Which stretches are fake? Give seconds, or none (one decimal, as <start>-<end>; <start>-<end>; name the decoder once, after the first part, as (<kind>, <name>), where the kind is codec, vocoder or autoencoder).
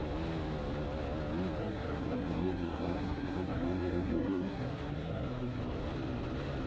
1.6-5.6 (codec, SNAC)